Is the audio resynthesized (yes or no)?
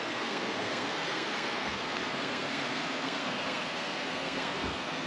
yes